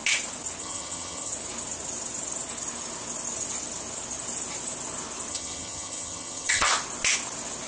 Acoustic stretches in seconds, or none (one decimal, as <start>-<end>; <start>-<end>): 0.0-0.6; 1.3-5.3; 6.7-7.7